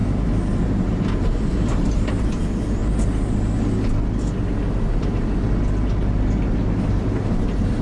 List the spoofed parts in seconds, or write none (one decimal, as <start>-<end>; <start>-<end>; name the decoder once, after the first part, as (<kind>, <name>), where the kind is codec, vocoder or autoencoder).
0.0-2.8 (vocoder, BigVGAN v2); 6.9-7.8